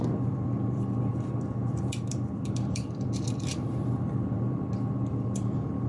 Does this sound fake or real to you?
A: fake